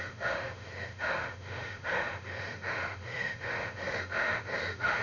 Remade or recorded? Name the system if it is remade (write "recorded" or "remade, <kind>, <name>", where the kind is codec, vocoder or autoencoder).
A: remade, autoencoder, DAC-VAE